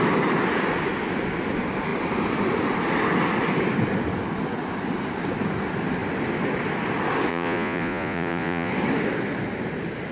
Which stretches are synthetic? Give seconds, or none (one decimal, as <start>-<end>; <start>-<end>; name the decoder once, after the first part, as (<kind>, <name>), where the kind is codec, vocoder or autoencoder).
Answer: 7.3-8.7 (vocoder, Vocos)